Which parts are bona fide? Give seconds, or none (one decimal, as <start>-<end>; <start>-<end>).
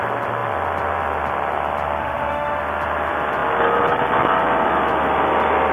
0.0-2.0; 2.6-5.7